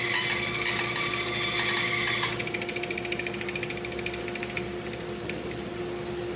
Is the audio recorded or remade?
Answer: recorded